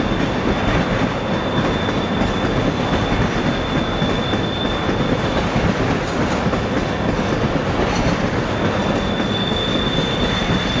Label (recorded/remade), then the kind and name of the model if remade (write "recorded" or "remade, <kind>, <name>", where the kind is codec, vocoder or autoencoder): recorded